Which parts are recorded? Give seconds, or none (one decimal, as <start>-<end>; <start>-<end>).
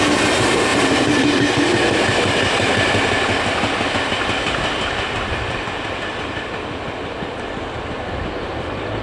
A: 0.7-3.9